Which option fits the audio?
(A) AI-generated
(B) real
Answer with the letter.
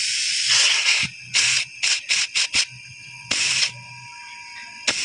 B